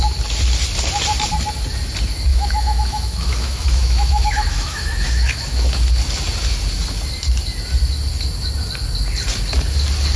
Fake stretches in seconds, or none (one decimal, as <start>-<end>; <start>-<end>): 2.3-5.7